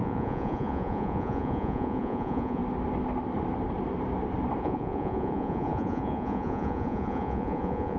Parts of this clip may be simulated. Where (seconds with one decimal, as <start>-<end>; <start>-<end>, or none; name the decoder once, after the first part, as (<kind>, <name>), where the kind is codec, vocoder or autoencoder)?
0.0-2.6 (vocoder, Vocos); 4.6-8.0